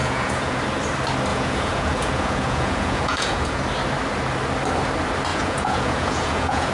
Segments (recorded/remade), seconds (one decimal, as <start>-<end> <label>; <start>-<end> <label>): 0.0-0.6 remade; 0.6-1.3 recorded; 1.3-3.6 remade; 3.6-5.3 recorded; 5.3-6.7 remade